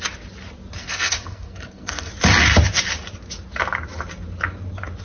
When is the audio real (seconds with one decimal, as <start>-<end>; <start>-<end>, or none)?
0.0-0.8; 2.1-5.0